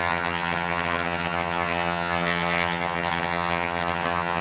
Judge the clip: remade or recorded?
remade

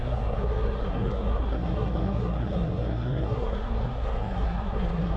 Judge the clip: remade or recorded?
remade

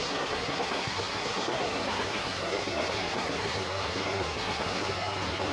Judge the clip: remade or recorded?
remade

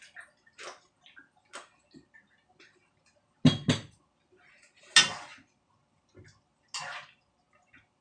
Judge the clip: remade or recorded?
recorded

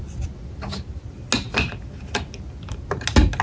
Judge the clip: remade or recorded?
recorded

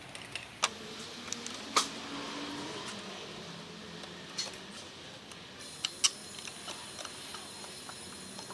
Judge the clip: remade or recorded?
recorded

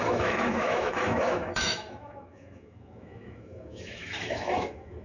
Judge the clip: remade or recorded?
remade